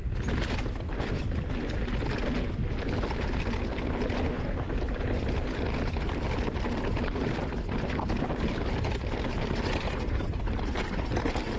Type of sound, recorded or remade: recorded